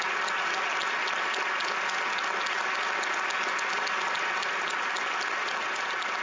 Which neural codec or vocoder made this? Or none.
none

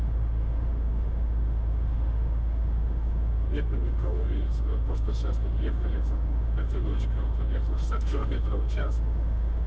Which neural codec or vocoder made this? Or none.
autoencoder, DAC-VAE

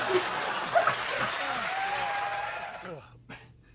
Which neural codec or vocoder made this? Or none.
none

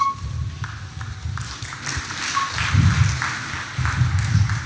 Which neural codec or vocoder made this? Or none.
none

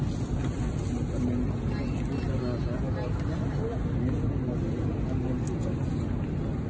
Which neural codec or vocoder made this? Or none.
none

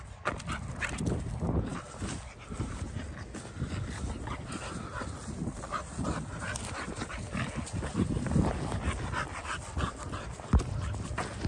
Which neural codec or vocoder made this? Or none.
none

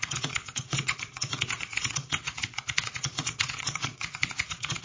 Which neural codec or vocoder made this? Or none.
vocoder, WaveNeXt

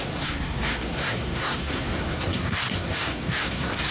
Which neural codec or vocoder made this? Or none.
codec, SNAC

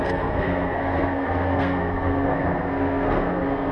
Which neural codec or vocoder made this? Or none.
codec, SNAC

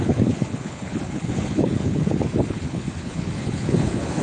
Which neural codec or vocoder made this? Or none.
codec, HILCodec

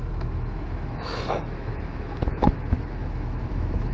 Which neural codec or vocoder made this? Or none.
autoencoder, DAC-VAE